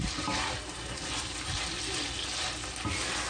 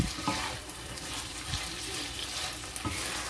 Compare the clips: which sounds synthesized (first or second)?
second